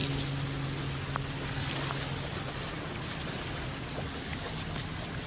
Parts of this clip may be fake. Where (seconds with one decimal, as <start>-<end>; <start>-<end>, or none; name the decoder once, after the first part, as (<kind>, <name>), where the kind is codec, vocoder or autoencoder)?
none

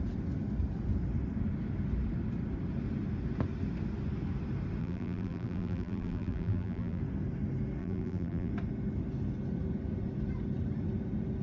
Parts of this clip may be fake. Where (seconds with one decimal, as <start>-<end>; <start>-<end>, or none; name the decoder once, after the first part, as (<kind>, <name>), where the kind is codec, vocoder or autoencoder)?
4.8-7.0 (vocoder, BigVGAN v2); 7.8-8.5

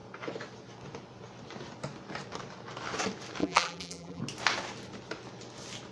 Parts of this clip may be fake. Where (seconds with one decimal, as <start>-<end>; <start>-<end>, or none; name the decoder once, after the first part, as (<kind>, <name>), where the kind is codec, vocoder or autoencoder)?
3.4-4.2 (vocoder, BigVGAN v2)

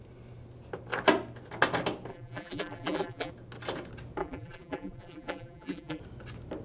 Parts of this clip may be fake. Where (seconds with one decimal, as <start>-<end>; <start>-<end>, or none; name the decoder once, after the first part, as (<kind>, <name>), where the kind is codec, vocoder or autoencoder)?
2.1-3.3 (vocoder, BigVGAN v2); 4.2-6.0

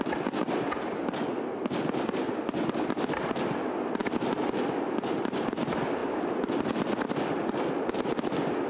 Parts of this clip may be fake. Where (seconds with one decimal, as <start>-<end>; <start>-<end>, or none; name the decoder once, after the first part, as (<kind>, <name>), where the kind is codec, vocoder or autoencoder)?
none